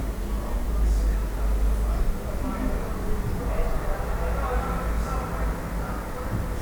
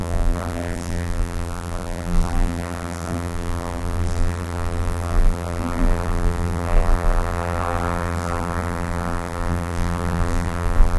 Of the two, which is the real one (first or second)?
first